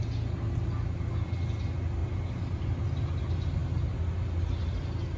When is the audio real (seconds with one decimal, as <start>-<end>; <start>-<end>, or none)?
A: 0.0-2.0; 2.8-5.2